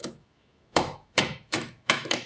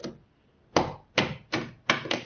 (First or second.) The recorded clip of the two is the second